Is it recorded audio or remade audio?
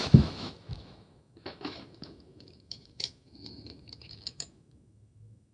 remade